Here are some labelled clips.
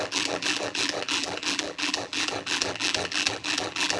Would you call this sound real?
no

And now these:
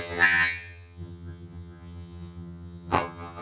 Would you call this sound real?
no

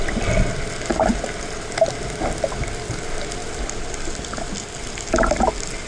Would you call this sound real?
yes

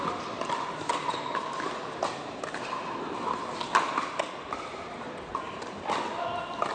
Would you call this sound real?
yes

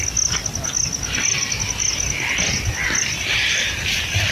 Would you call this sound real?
yes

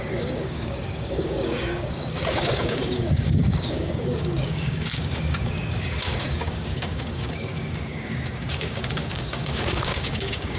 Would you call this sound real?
no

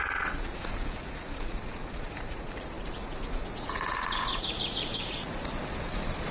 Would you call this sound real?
no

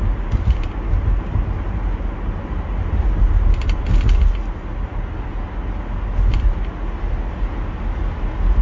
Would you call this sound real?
yes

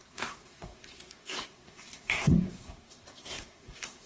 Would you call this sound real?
no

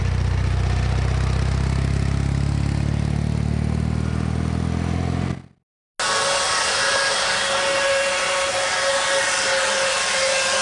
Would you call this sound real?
yes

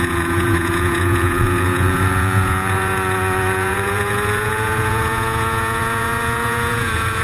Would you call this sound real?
no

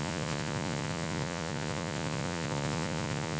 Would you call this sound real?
no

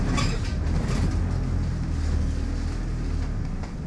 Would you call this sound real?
yes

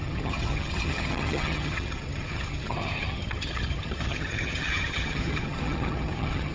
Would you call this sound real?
no